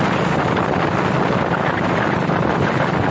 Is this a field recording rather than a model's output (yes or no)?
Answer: yes